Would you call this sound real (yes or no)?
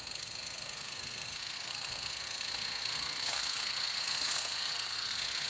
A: no